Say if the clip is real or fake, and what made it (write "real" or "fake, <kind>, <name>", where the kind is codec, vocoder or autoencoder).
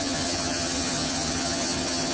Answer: fake, vocoder, HiFi-GAN